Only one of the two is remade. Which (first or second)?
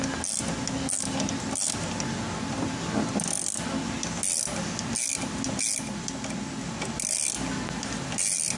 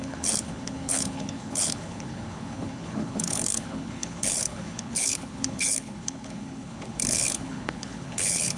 second